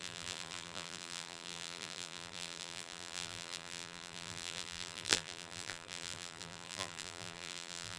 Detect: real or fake fake